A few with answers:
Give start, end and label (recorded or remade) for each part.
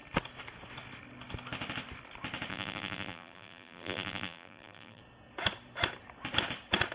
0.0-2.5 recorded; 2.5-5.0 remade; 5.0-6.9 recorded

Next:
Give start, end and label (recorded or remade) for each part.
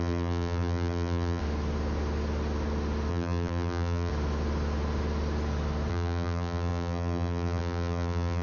0.0-1.4 remade; 1.4-3.1 recorded; 3.1-4.1 remade; 4.1-5.9 recorded; 5.9-8.4 remade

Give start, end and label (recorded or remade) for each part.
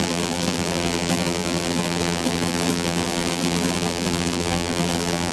0.0-5.3 remade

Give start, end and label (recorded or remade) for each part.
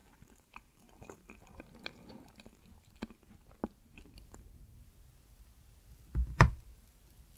0.0-2.6 remade; 2.6-6.2 recorded; 6.2-7.0 remade; 7.0-7.4 recorded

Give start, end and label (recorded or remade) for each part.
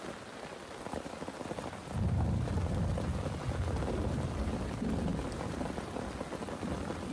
0.0-7.1 recorded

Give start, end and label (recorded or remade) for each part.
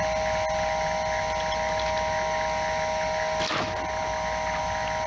0.0-5.1 recorded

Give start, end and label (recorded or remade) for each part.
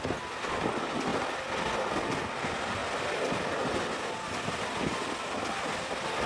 0.0-6.3 recorded